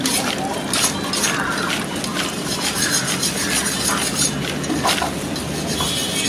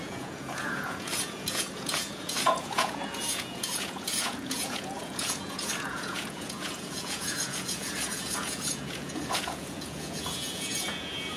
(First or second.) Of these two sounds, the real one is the first